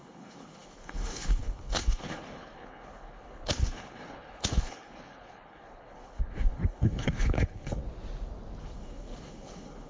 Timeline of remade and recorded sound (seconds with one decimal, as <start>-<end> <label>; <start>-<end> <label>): 0.0-7.8 remade; 7.8-8.6 recorded; 8.6-9.9 remade

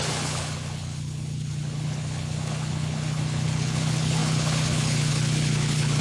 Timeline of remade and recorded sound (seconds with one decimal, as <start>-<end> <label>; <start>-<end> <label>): 0.0-6.0 remade

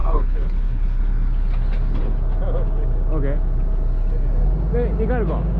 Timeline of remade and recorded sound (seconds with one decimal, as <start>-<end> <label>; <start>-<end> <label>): 0.0-1.0 remade; 1.0-5.6 recorded

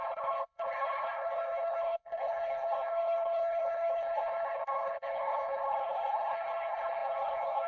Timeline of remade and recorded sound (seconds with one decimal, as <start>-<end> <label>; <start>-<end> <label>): 0.0-7.7 remade

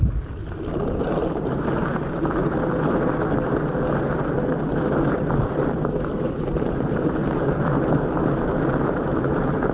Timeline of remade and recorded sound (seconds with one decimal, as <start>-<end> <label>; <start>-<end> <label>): 0.0-9.7 recorded

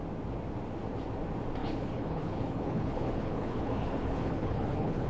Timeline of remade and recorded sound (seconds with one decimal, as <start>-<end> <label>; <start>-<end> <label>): 0.0-1.6 recorded; 1.6-5.1 remade

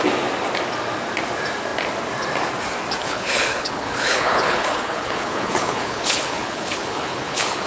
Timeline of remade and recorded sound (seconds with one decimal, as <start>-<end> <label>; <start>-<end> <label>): 0.0-3.0 recorded; 3.0-7.7 remade